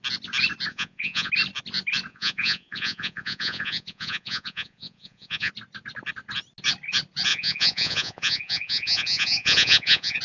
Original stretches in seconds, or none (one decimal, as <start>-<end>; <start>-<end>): 0.0-0.7; 1.3-2.1; 5.5-7.3